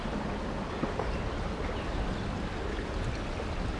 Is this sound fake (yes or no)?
no